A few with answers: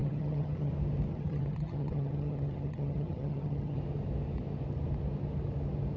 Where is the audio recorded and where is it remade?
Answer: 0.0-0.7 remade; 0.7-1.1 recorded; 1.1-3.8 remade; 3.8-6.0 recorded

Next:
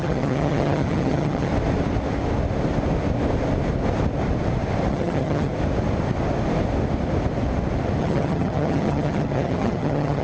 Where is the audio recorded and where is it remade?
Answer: 0.0-1.5 remade; 1.5-4.9 recorded; 4.9-5.5 remade; 5.5-8.0 recorded; 8.0-10.2 remade